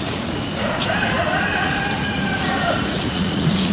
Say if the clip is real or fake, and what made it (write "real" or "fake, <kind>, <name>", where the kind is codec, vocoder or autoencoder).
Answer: fake, vocoder, Vocos